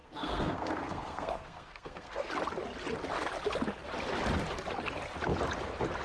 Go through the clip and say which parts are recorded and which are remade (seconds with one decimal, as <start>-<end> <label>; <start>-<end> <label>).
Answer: 0.0-2.3 remade; 2.3-6.0 recorded